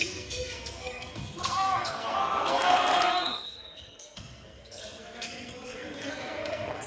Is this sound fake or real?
fake